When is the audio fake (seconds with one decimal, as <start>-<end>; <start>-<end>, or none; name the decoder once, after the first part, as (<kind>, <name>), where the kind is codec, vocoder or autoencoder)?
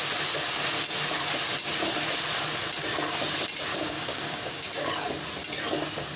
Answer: 3.7-4.9 (codec, DAC)